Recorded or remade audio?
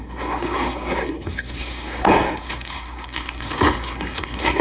remade